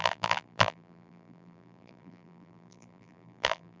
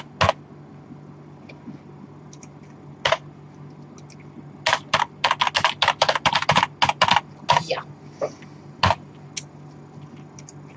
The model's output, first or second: first